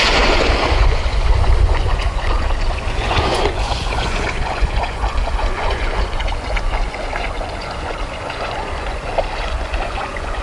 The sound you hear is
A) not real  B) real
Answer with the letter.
A